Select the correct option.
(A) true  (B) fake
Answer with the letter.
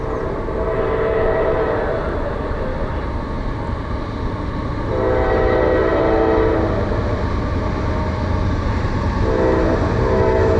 A